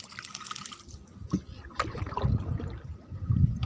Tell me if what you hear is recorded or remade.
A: recorded